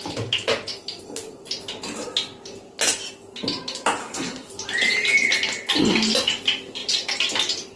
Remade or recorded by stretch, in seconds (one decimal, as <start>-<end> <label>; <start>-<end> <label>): 0.0-4.0 recorded; 4.0-4.5 remade; 4.5-7.8 recorded